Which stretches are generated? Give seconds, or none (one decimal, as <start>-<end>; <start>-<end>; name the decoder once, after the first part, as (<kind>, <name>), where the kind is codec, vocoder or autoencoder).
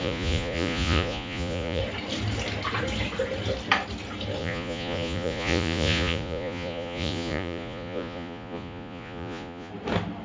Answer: 0.0-1.8 (vocoder, Vocos); 4.4-9.7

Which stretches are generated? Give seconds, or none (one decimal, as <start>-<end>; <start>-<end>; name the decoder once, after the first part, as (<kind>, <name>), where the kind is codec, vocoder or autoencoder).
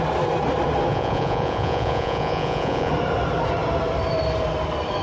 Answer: 0.9-2.9 (vocoder, Vocos)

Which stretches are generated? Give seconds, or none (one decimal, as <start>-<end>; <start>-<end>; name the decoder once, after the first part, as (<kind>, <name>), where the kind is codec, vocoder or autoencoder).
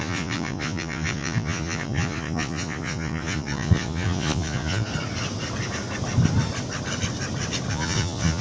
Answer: 0.0-4.9 (vocoder, Vocos); 7.7-8.4